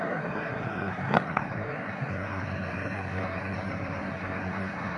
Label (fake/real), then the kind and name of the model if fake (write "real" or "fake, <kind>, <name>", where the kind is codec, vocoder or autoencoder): fake, codec, SNAC